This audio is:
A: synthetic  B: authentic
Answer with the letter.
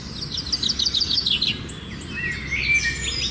B